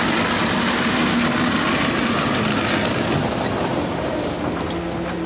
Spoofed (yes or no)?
no